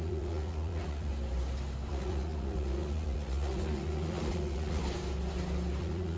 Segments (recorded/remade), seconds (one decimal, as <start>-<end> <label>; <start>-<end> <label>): 0.0-1.1 remade; 1.1-1.9 recorded; 1.9-4.8 remade; 4.8-5.8 recorded; 5.8-6.2 remade